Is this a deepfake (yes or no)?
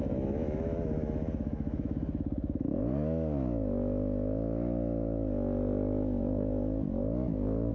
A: yes